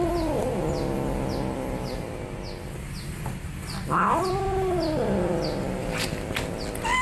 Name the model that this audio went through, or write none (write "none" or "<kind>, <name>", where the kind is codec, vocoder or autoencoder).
none